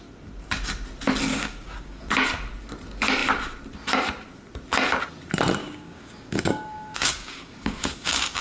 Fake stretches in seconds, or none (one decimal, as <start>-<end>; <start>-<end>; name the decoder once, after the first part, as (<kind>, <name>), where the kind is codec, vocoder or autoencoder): 1.3-2.0 (codec, DAC); 5.6-8.4